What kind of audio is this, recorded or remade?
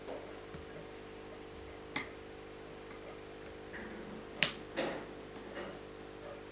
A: recorded